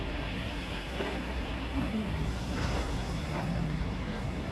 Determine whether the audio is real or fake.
fake